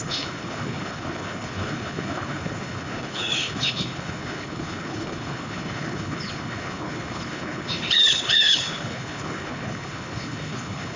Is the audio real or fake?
fake